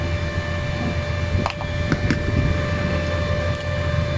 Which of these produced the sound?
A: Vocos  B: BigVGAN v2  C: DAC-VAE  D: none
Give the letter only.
D